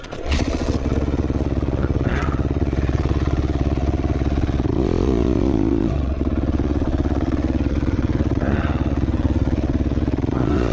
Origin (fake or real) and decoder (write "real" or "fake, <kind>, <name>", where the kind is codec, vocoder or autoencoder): fake, vocoder, Vocos